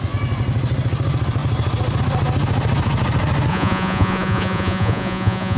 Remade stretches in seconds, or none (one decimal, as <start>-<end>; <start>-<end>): 3.5-5.6